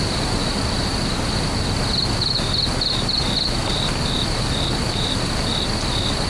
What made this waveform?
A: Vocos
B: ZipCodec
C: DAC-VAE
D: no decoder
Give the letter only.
D